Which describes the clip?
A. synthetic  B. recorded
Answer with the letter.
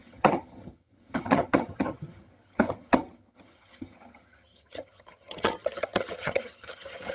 A